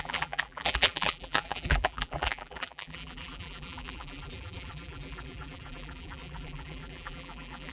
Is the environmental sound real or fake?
fake